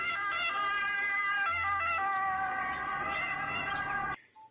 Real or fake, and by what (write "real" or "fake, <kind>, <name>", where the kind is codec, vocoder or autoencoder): real